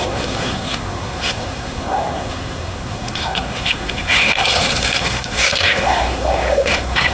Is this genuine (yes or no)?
no